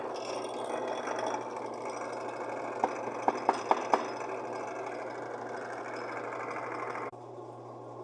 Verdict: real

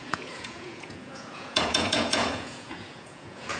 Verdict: fake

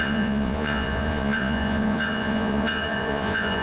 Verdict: fake